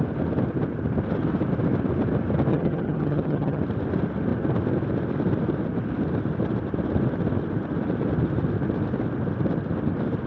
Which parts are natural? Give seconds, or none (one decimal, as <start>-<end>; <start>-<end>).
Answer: 0.0-2.5; 3.6-10.3